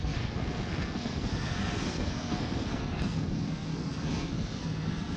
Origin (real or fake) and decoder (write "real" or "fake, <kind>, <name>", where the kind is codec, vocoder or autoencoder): fake, codec, SNAC